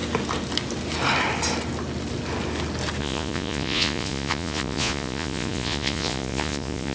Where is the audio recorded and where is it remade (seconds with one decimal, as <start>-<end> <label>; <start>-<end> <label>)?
0.0-3.0 recorded; 3.0-6.9 remade

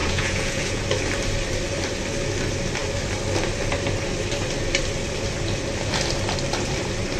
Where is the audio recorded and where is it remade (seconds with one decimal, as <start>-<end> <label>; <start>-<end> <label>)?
0.0-0.8 remade; 0.8-7.2 recorded

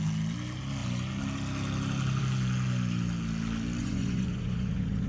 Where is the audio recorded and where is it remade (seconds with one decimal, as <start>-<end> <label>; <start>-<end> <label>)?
0.0-3.8 recorded; 3.8-5.1 remade

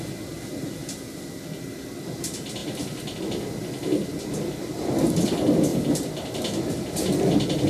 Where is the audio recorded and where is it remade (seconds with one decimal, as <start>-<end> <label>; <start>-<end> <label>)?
0.0-7.7 recorded

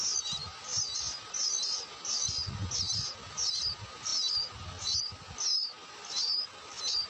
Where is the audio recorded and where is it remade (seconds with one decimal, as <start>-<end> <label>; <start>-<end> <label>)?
0.0-7.1 recorded

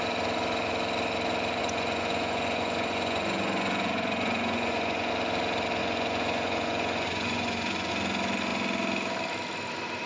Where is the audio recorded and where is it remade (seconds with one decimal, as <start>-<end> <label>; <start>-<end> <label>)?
0.0-1.6 recorded; 1.6-5.1 remade; 5.1-5.8 recorded; 5.8-7.9 remade; 7.9-10.1 recorded

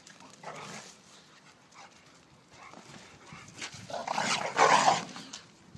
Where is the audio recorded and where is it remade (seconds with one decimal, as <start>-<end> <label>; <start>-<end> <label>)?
0.0-5.8 recorded